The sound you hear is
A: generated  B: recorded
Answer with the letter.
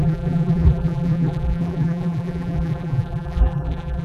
A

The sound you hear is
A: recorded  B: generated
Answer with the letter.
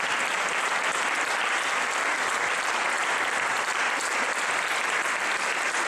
A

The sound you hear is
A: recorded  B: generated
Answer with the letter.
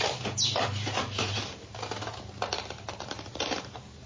B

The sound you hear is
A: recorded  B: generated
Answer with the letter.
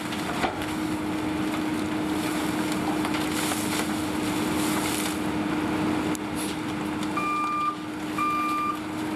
A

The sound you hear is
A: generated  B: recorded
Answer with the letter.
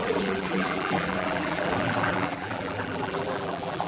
A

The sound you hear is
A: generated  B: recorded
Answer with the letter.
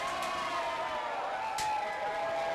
B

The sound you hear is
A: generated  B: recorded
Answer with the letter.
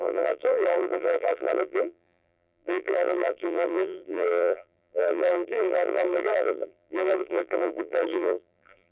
A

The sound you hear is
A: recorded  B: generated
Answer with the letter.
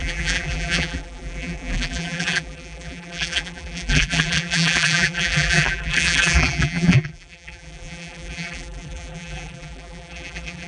B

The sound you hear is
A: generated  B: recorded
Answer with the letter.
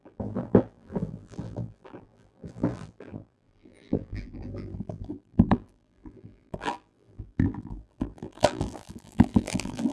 A